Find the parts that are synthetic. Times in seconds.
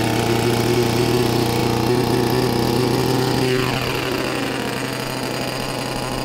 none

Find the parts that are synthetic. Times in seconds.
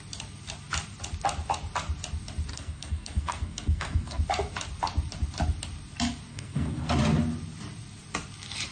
2.5-4.2 (codec, SNAC); 6.3-6.9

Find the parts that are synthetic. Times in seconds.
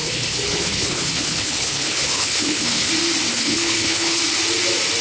0.0-2.9 (codec, HILCodec); 3.3-4.2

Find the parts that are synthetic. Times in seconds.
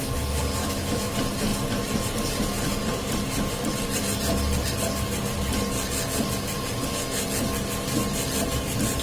0.6-1.1 (autoencoder, DAC-VAE)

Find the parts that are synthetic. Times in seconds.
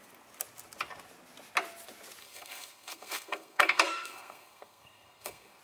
2.2-5.6 (codec, SNAC)